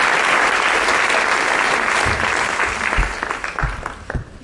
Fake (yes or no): no